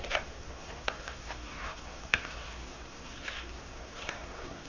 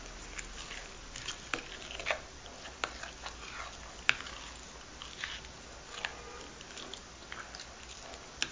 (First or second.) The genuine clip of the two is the second